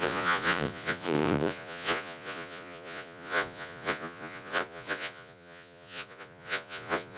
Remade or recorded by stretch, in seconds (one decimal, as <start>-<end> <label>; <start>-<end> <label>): 0.0-7.2 remade